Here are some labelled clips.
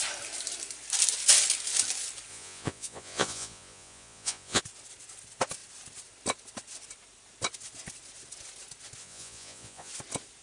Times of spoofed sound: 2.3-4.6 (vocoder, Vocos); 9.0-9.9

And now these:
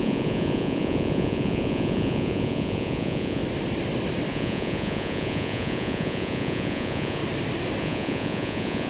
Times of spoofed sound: 0.0-3.4 (vocoder, Vocos); 4.3-7.2; 7.8-8.9

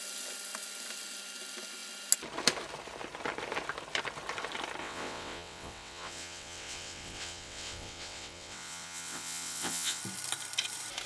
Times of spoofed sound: 4.8-10.0 (vocoder, WaveNeXt)

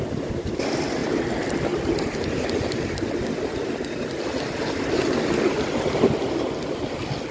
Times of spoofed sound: none